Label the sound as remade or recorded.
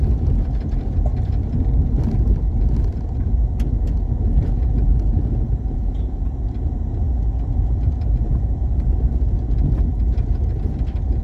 recorded